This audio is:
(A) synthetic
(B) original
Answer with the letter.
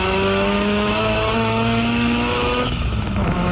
A